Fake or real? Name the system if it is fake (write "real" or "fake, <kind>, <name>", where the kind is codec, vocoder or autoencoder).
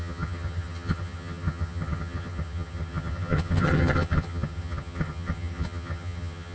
fake, vocoder, HiFi-GAN